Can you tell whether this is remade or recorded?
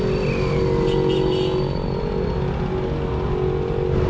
recorded